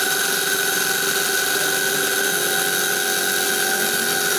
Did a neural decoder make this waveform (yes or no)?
no